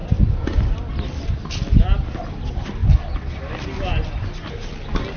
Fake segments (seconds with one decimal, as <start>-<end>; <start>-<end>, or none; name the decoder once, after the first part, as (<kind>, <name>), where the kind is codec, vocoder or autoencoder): none

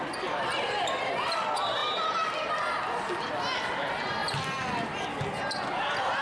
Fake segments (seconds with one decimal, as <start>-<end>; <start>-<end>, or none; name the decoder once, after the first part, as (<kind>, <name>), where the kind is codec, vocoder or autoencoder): none

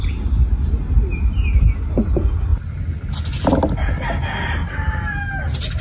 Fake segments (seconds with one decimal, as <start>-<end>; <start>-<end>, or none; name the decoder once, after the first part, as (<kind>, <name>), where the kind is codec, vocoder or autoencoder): none

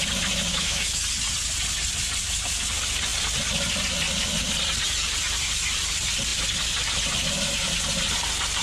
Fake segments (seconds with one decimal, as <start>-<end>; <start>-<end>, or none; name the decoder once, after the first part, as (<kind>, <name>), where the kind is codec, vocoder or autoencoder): 0.5-1.0 (autoencoder, DAC-VAE)

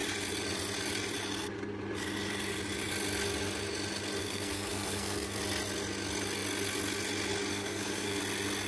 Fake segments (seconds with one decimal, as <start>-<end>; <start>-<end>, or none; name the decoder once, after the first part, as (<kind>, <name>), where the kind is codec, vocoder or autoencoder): 4.2-5.4 (codec, SNAC); 7.5-8.2

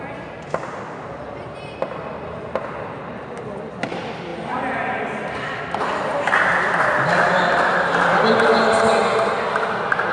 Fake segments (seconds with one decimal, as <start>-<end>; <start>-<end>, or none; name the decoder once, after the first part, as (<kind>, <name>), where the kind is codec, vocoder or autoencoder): 4.3-5.6 (vocoder, BigVGAN v2)

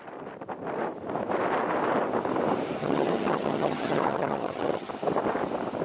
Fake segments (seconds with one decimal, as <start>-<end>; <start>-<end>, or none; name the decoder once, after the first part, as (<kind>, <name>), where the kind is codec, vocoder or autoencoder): 2.8-4.9 (vocoder, HiFi-GAN)